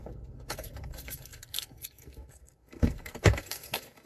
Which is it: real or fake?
fake